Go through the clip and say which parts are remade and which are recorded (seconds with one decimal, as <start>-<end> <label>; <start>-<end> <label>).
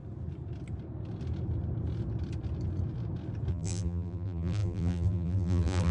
0.0-3.5 recorded; 3.5-5.9 remade